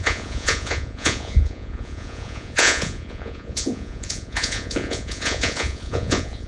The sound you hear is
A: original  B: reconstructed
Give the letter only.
B